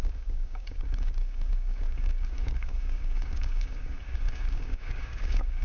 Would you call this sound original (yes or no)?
no